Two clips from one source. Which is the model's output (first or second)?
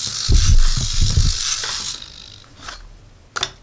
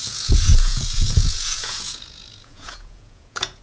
second